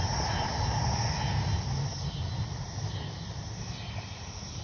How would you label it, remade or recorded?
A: recorded